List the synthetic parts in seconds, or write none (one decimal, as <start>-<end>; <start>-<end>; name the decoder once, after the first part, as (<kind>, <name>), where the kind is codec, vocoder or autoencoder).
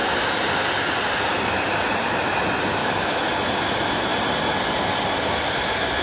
2.8-3.3 (autoencoder, DAC-VAE)